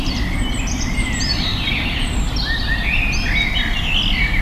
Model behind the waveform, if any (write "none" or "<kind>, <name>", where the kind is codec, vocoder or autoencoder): vocoder, BigVGAN v2